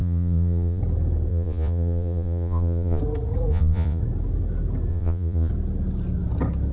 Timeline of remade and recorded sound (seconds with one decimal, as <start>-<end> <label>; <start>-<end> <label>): 0.0-0.8 remade; 0.8-1.3 recorded; 1.3-3.0 remade; 3.0-3.5 recorded; 3.5-4.0 remade; 4.0-4.9 recorded; 4.9-5.5 remade; 5.5-6.7 recorded